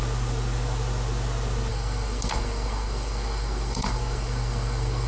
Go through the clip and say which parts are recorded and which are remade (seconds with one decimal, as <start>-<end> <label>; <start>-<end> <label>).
0.0-1.7 recorded; 1.7-5.1 remade